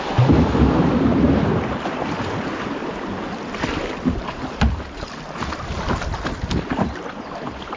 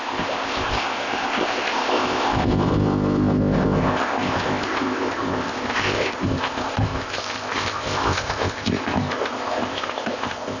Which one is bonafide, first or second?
first